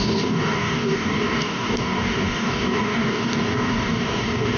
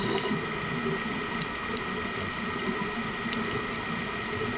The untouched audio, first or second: second